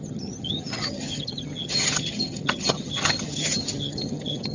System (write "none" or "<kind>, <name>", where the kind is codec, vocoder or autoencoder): vocoder, HiFi-GAN